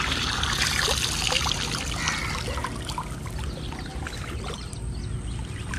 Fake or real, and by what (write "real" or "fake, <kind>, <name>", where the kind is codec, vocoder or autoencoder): real